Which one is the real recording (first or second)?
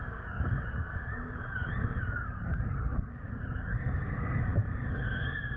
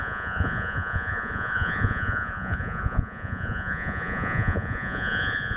first